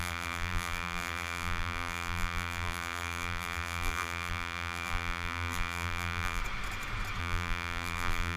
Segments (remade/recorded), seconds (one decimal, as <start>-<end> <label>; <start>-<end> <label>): 0.0-6.4 remade; 6.4-7.2 recorded; 7.2-8.4 remade